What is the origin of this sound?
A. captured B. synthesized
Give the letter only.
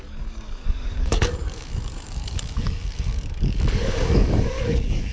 B